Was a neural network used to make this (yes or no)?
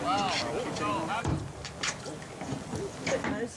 no